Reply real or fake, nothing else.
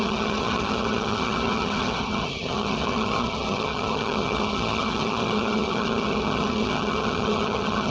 fake